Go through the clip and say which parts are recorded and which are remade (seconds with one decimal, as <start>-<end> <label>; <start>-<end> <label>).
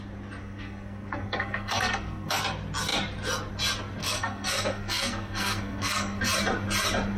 0.0-0.4 recorded; 0.4-2.4 remade; 2.4-4.0 recorded; 4.0-6.2 remade; 6.2-7.2 recorded